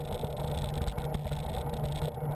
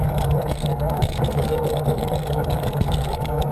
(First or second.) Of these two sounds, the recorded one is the first